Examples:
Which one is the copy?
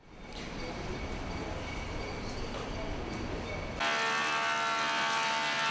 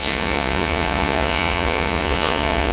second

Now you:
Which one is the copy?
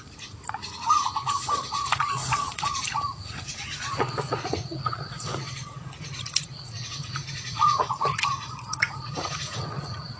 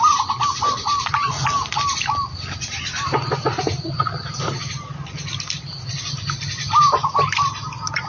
first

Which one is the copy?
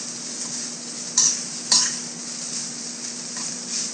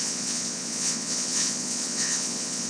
second